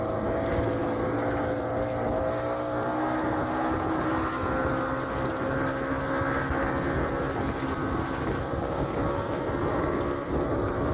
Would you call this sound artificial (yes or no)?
no